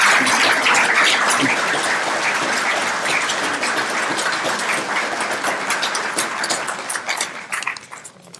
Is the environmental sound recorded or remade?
recorded